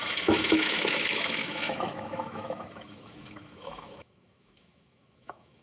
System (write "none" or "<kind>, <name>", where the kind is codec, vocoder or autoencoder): autoencoder, DAC-VAE